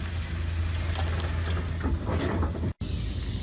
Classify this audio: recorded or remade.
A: recorded